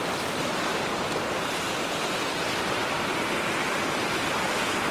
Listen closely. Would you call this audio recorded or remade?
recorded